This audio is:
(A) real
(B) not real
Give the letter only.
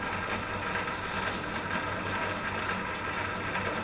A